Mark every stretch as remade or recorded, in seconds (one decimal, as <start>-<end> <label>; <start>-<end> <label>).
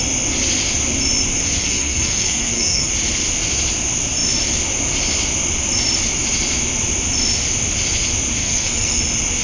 0.0-1.6 recorded; 1.6-2.9 remade; 2.9-8.4 recorded; 8.4-9.0 remade; 9.0-9.4 recorded